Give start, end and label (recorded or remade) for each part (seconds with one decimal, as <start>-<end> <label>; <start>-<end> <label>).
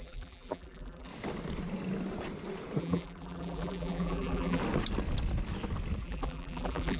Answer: 0.0-1.1 remade; 1.1-2.8 recorded; 2.8-4.6 remade; 4.6-6.0 recorded; 6.0-7.0 remade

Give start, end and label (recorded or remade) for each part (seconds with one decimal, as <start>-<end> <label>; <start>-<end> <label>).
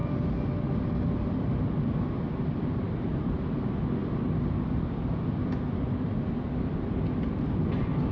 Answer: 0.0-0.7 recorded; 0.7-8.1 remade